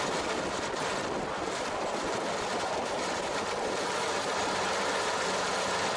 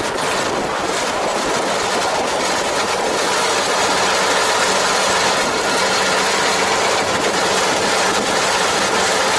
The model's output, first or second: first